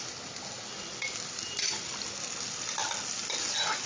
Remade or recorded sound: recorded